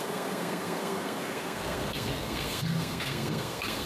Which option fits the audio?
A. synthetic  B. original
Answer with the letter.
A